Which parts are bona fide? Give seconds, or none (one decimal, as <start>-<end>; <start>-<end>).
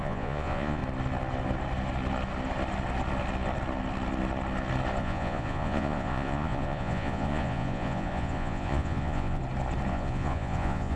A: 0.8-5.0; 9.4-9.9